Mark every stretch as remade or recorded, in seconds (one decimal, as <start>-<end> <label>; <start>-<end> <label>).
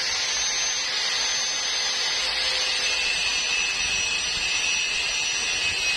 0.0-6.0 recorded